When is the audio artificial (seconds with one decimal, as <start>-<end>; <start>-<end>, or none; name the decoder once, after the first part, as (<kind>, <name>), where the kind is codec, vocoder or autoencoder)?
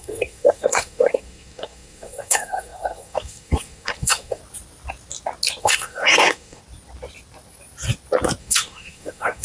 0.0-4.4 (codec, SNAC); 5.6-6.6; 8.4-9.4